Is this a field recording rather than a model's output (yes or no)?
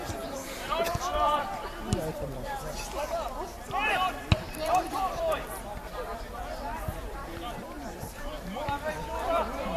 no